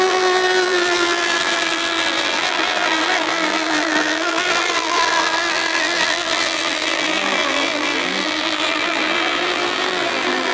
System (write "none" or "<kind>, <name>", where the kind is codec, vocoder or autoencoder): vocoder, BigVGAN v2